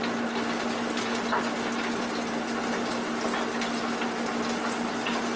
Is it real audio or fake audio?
real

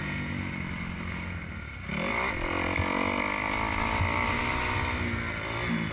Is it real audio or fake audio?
real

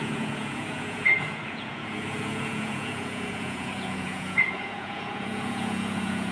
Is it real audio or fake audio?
fake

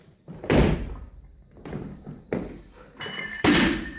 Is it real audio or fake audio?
fake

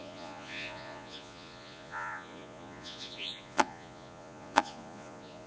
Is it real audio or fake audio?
fake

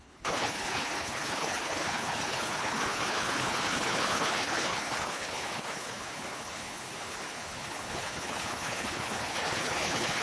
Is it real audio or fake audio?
fake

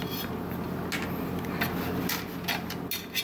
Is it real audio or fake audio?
real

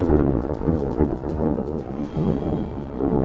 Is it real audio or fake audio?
fake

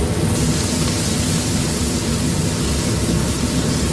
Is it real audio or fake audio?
real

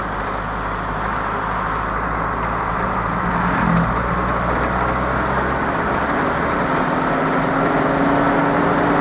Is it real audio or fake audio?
real